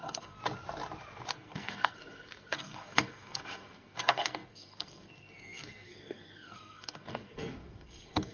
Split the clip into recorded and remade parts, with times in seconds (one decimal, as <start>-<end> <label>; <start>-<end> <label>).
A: 0.0-0.4 remade; 0.4-1.3 recorded; 1.3-8.3 remade